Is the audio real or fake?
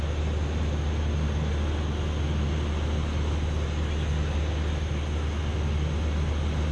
real